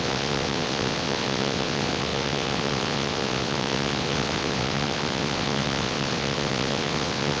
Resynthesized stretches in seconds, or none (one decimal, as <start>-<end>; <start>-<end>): 0.0-7.4